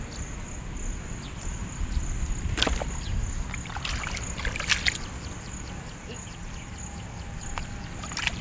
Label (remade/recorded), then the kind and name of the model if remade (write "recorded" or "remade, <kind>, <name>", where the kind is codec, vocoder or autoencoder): recorded